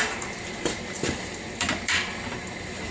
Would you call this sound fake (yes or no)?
yes